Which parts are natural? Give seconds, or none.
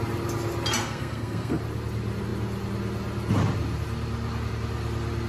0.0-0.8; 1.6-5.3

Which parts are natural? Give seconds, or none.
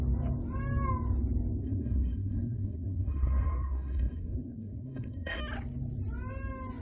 0.0-1.6; 5.4-6.8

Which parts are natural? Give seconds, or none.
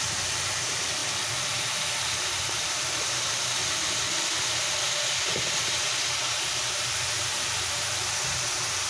1.0-2.0; 4.3-6.2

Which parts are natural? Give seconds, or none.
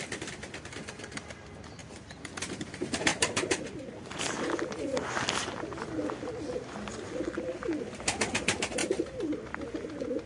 0.0-3.1; 4.2-8.8; 9.3-10.3